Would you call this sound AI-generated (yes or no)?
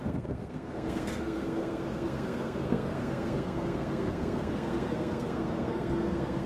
yes